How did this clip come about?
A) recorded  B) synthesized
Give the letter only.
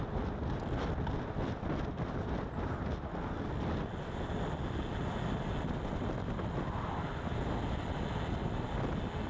A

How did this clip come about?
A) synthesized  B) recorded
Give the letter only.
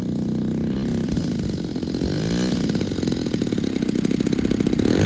B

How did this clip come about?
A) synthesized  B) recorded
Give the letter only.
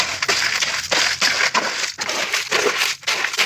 B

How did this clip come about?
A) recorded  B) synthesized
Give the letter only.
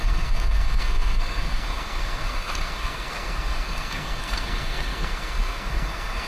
B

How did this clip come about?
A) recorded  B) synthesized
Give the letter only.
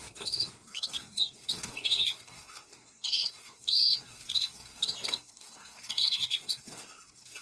B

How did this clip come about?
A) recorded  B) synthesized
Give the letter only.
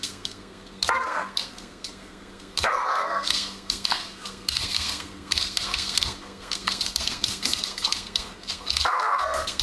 B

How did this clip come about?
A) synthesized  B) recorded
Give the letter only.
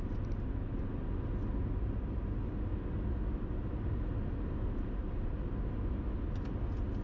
B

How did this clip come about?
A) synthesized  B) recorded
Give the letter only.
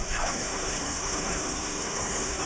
A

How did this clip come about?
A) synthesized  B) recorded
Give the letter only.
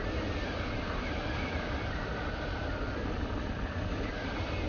B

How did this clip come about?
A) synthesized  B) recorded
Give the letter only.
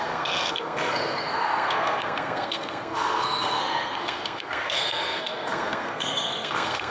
A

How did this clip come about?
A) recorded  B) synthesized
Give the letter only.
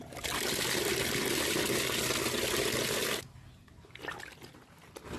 A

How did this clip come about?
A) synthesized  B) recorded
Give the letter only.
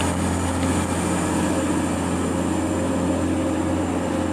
B